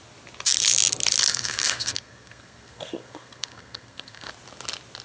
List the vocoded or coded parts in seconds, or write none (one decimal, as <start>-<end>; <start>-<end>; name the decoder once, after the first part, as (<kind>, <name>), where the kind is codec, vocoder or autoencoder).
1.3-4.3 (codec, SNAC)